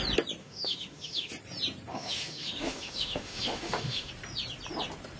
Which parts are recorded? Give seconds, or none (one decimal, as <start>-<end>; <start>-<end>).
0.0-0.4; 1.3-1.9; 4.1-5.2